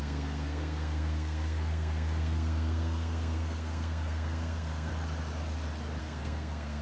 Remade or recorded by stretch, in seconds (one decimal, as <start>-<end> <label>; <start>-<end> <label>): 0.0-4.9 remade; 4.9-6.0 recorded; 6.0-6.8 remade